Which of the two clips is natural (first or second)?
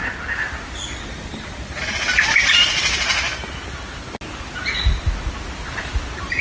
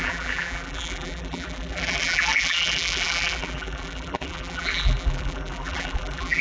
first